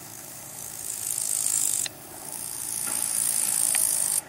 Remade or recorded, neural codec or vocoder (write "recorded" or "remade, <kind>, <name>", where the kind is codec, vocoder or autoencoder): remade, codec, DAC